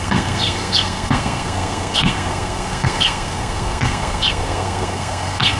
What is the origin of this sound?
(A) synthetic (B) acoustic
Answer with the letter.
A